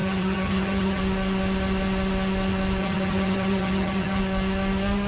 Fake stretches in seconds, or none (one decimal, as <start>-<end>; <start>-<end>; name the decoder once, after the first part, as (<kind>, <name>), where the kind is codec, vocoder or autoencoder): 0.0-1.0 (vocoder, HiFi-GAN); 2.8-4.2